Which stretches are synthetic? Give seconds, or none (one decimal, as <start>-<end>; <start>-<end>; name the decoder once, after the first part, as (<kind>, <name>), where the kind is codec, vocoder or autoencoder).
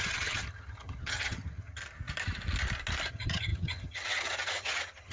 0.0-1.8 (vocoder, HiFi-GAN); 3.1-5.1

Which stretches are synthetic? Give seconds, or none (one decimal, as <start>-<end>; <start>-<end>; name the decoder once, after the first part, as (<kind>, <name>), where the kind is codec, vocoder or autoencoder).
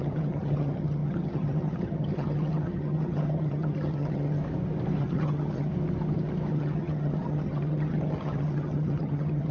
0.0-4.4 (vocoder, HiFi-GAN); 5.0-5.7; 6.5-9.5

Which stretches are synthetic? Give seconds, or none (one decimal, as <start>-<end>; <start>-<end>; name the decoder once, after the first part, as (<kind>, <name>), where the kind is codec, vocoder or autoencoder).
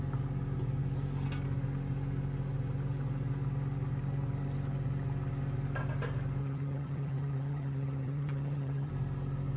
6.4-8.9 (vocoder, HiFi-GAN)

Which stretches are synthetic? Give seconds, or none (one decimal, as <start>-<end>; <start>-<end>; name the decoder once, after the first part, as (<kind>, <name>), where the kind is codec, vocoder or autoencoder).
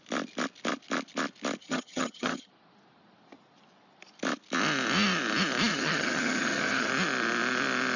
1.6-2.5 (vocoder, HiFi-GAN); 5.7-6.9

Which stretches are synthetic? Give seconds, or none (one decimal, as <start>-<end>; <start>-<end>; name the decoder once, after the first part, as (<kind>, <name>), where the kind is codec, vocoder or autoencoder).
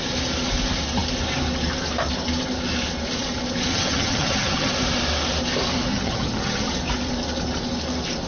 3.7-4.7 (vocoder, HiFi-GAN); 5.9-6.7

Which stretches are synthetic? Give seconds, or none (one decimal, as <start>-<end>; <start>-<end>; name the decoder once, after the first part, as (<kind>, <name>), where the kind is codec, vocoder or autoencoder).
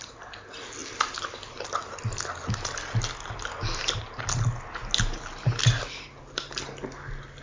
none